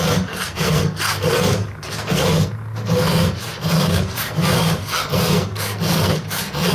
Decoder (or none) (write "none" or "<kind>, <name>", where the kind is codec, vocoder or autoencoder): codec, SNAC